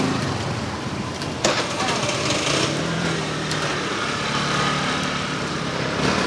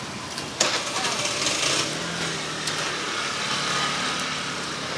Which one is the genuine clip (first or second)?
second